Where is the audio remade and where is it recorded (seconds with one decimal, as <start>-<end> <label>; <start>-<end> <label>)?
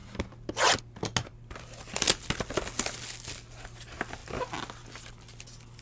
0.0-5.8 recorded